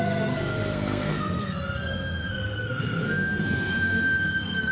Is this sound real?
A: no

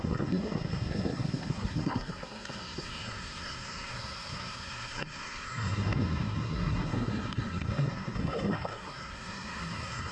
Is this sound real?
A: no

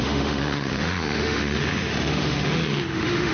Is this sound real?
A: no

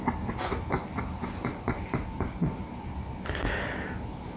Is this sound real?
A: yes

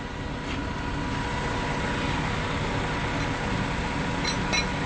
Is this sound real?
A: yes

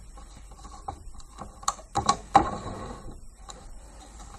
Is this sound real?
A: no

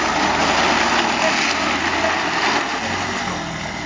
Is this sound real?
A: yes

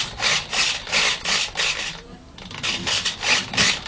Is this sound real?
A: yes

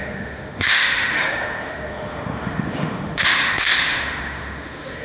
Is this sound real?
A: no